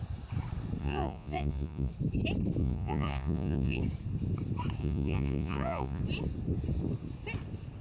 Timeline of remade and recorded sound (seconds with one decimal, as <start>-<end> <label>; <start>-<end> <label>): 0.0-0.8 recorded; 0.8-1.9 remade; 1.9-2.6 recorded; 2.6-3.8 remade; 3.8-4.8 recorded; 4.8-6.0 remade; 6.0-7.8 recorded